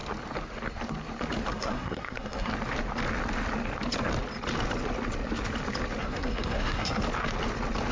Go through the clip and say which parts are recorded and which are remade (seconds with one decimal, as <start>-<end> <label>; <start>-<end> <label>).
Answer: 0.0-1.5 recorded; 1.5-2.5 remade; 2.5-6.0 recorded; 6.0-7.0 remade; 7.0-7.9 recorded